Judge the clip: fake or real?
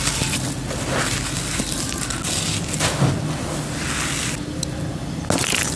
real